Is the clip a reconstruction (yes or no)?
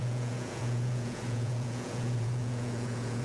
yes